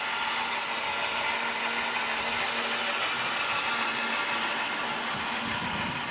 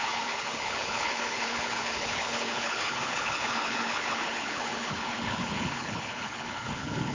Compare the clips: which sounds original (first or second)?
first